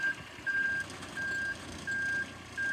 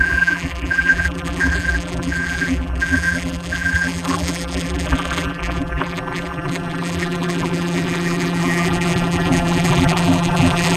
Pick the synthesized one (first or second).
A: second